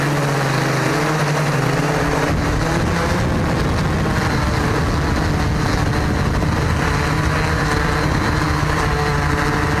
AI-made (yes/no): no